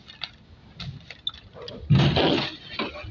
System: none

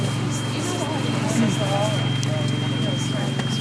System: none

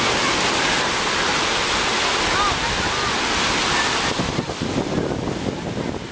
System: none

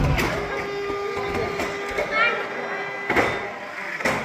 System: none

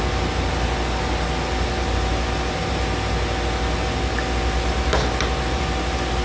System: none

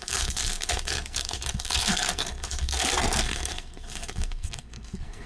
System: codec, SNAC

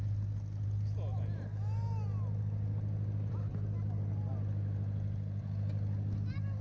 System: none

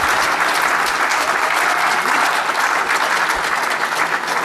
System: none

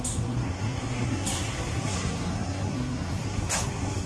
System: codec, SNAC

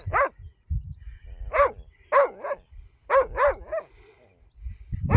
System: none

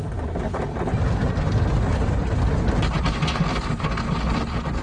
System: none